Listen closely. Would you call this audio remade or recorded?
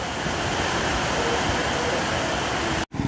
recorded